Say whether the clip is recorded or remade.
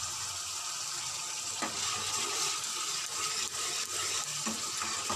recorded